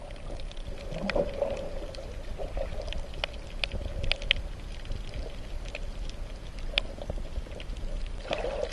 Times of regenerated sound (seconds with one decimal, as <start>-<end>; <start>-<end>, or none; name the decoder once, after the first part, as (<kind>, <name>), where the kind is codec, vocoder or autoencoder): none